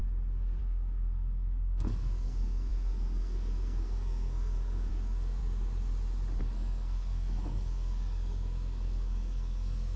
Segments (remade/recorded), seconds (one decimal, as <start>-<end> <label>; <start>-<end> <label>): 0.0-0.6 recorded; 0.6-5.4 remade; 5.4-6.4 recorded; 6.4-10.0 remade